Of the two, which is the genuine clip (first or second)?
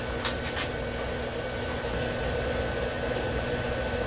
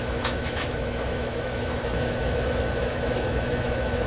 first